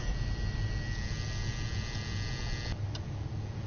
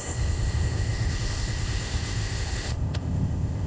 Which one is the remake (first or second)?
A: second